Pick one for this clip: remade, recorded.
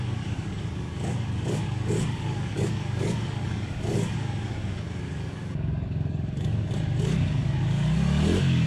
remade